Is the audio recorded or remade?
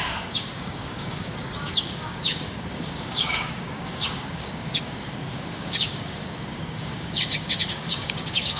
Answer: remade